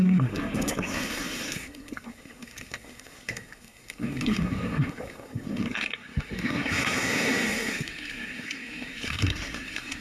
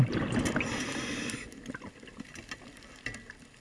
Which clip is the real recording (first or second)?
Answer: second